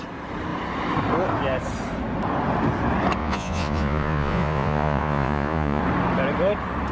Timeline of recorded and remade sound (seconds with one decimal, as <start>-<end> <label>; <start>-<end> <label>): 0.0-3.2 recorded; 3.2-5.8 remade; 5.8-6.9 recorded